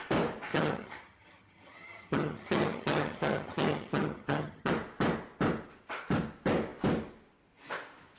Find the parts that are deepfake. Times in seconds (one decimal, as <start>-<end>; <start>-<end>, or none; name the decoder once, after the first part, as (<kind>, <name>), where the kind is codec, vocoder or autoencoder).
0.5-4.7 (vocoder, HiFi-GAN)